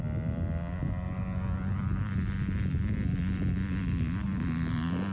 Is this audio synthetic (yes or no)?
no